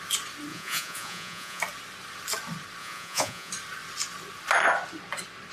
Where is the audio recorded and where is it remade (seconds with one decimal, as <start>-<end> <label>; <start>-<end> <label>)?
0.0-0.5 recorded; 0.5-1.6 remade; 1.6-2.8 recorded; 2.8-3.5 remade; 3.5-5.5 recorded